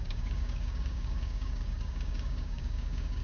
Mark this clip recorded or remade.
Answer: remade